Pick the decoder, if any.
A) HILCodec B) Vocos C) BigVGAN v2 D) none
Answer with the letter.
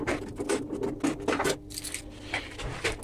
D